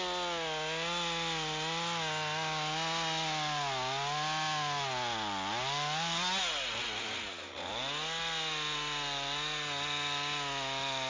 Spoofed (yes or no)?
no